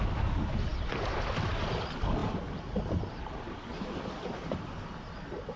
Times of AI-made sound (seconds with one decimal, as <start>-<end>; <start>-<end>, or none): 0.7-1.5; 3.7-4.3